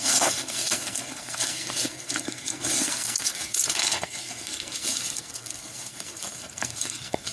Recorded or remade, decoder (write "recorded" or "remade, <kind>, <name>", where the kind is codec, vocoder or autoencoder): remade, codec, SNAC